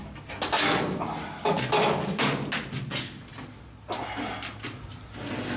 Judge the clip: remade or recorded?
recorded